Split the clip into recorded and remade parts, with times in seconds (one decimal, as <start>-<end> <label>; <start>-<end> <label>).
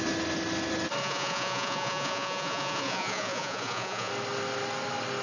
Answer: 0.0-1.0 recorded; 1.0-4.1 remade; 4.1-5.2 recorded